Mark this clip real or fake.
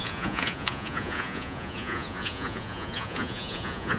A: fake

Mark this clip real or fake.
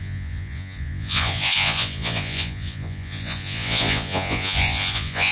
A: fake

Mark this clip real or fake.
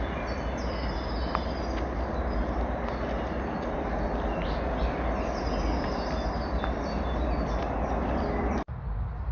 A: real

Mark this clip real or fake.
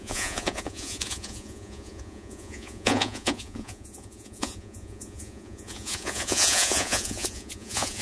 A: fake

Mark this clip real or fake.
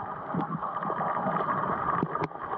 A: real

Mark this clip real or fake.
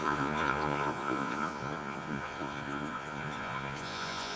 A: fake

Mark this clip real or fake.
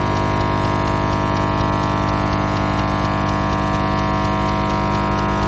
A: real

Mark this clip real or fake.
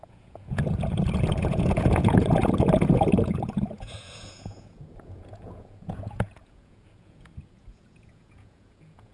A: fake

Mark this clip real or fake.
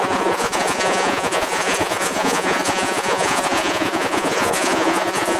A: fake